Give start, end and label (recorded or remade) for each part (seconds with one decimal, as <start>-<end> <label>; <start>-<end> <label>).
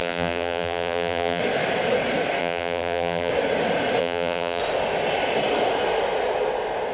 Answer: 0.0-1.4 remade; 1.4-2.4 recorded; 2.4-3.3 remade; 3.3-4.0 recorded; 4.0-4.6 remade; 4.6-6.9 recorded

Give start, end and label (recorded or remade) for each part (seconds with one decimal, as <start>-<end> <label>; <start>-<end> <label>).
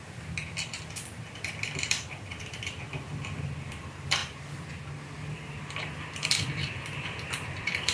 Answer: 0.0-4.2 remade; 4.2-5.2 recorded; 5.2-7.9 remade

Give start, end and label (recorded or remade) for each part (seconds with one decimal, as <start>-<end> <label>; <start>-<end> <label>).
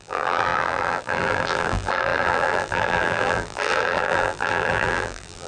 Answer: 0.0-5.5 remade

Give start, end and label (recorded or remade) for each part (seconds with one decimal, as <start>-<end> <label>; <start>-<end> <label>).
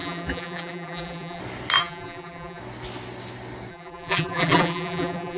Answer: 0.0-1.4 remade; 1.4-1.8 recorded; 1.8-2.6 remade; 2.6-3.7 recorded; 3.7-5.4 remade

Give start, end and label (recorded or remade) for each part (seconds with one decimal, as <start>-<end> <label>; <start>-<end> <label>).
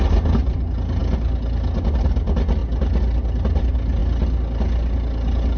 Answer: 0.0-5.6 recorded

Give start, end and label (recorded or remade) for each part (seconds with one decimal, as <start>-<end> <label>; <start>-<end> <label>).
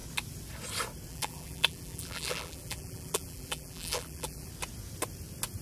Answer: 0.0-1.1 recorded; 1.1-4.5 remade; 4.5-5.6 recorded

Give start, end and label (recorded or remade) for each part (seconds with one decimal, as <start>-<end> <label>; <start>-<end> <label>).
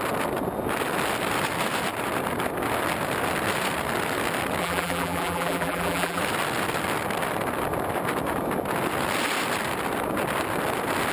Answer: 0.0-4.6 recorded; 4.6-6.2 remade; 6.2-11.1 recorded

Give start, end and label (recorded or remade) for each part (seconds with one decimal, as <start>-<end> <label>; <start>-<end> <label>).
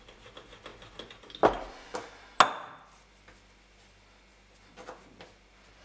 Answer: 0.0-5.8 recorded